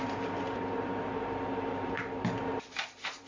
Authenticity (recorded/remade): remade